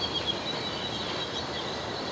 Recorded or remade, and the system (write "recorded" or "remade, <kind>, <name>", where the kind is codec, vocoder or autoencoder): recorded